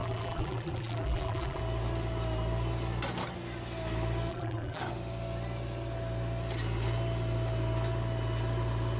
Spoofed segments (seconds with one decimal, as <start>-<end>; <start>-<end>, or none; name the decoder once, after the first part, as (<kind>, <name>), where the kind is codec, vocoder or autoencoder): 0.0-1.6 (vocoder, BigVGAN v2); 4.3-4.8